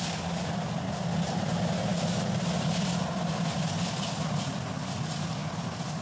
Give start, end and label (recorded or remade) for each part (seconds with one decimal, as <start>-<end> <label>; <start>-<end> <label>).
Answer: 0.0-6.0 recorded